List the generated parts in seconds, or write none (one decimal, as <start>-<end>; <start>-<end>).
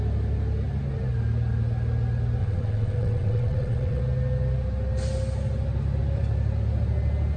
2.4-4.0